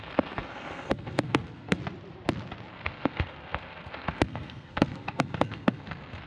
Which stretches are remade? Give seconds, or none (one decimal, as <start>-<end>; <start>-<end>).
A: 0.0-1.8; 2.7-6.3